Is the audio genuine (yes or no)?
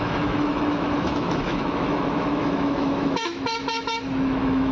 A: no